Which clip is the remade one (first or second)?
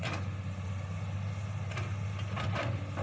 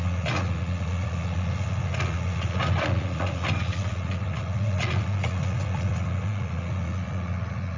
second